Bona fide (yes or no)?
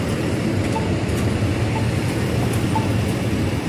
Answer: yes